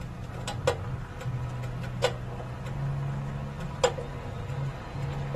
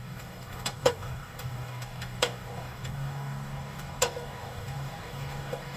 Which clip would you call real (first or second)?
first